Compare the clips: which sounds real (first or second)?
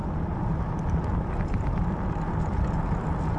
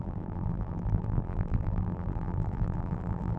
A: first